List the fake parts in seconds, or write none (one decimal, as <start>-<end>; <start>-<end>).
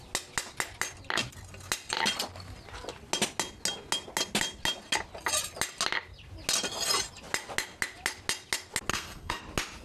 8.9-9.4